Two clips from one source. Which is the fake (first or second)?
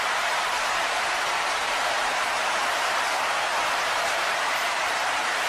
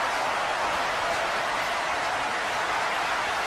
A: first